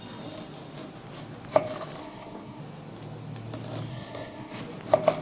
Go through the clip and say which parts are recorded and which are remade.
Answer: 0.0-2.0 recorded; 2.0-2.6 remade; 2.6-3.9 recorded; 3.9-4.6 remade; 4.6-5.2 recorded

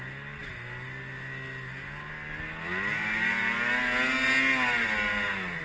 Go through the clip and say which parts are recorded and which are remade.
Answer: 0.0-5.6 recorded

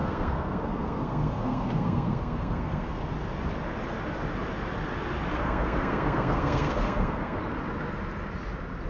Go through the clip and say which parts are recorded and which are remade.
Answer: 0.0-3.0 remade; 3.0-5.3 recorded; 5.3-7.4 remade; 7.4-8.9 recorded

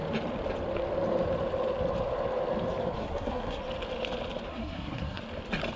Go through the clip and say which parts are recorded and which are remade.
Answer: 0.0-3.0 recorded; 3.0-3.6 remade; 3.6-4.5 recorded; 4.5-5.2 remade; 5.2-5.8 recorded